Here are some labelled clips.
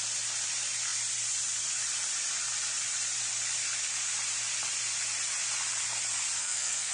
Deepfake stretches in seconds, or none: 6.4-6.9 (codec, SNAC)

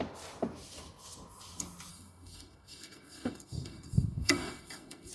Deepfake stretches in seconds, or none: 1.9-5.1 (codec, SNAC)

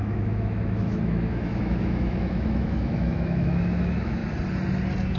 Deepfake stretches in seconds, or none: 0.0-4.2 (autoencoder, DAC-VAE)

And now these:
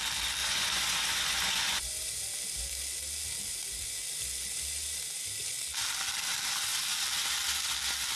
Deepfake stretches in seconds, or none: 0.4-2.2 (vocoder, Vocos)

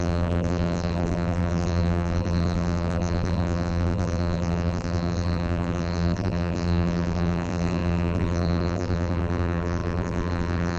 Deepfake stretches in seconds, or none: 0.0-10.8 (vocoder, BigVGAN v2)

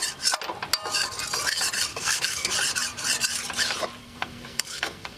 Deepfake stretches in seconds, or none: 1.9-2.5 (codec, SNAC); 4.0-5.2

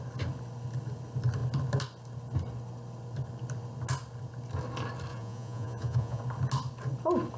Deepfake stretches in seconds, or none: 5.1-6.2 (vocoder, Vocos)